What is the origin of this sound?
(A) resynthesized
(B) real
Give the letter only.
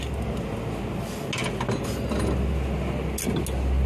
B